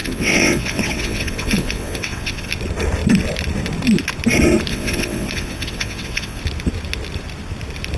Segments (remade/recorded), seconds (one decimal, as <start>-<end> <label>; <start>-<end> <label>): 0.0-2.5 remade; 2.5-4.7 recorded; 4.7-6.4 remade; 6.4-8.0 recorded